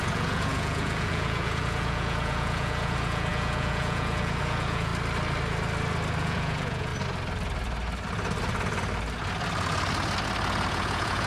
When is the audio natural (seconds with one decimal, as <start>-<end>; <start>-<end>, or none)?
4.9-6.2; 6.9-10.7